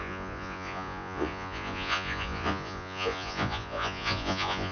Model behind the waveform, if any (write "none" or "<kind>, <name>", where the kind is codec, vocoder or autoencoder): vocoder, Vocos